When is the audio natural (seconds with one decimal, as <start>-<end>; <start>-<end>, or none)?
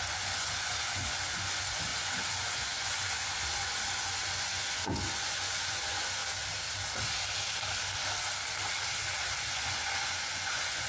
6.2-9.4